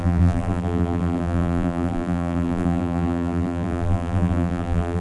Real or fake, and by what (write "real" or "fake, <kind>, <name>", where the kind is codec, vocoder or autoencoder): fake, vocoder, BigVGAN v2